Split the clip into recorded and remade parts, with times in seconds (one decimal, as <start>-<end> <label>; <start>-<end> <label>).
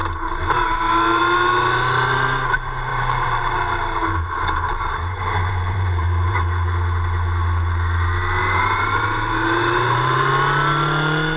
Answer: 0.0-2.9 recorded; 2.9-3.5 remade; 3.5-4.0 recorded; 4.0-6.4 remade; 6.4-8.4 recorded; 8.4-10.3 remade; 10.3-11.4 recorded